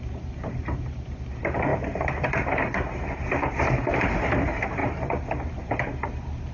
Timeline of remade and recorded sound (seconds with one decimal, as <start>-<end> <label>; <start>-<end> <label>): 0.0-6.5 remade